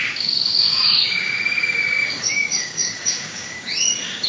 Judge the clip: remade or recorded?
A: remade